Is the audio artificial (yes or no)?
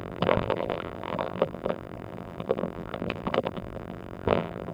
yes